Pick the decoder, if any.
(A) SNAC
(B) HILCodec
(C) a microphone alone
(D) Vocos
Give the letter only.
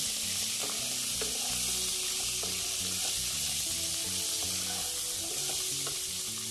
C